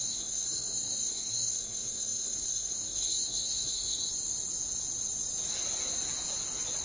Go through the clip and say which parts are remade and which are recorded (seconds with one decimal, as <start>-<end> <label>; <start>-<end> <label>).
0.0-4.0 remade; 4.0-6.8 recorded